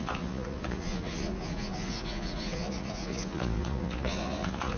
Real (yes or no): no